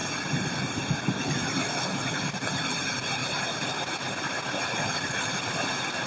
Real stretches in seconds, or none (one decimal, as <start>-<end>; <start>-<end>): 0.0-6.1